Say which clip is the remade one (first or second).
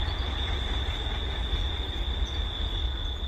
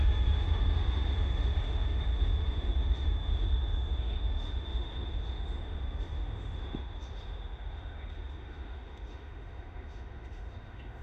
second